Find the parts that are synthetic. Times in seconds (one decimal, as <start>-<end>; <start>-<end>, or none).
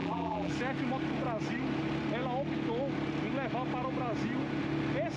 0.0-0.5